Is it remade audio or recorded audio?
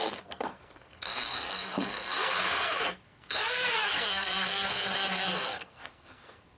remade